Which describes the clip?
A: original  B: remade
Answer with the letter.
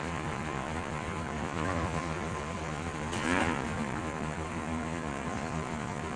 B